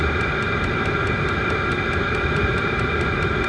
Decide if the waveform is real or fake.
real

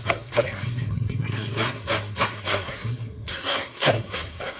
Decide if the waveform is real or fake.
fake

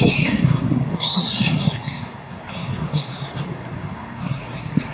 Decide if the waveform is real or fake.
fake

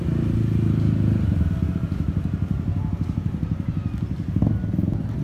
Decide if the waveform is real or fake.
real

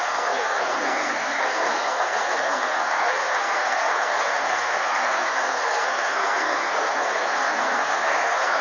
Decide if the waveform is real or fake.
fake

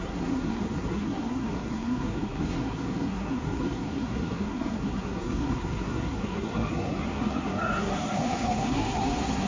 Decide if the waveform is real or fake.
fake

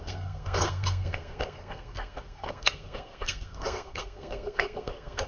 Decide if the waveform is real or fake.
fake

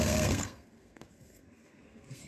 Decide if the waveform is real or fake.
fake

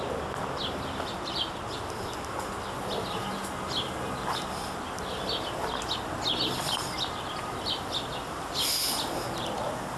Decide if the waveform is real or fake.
real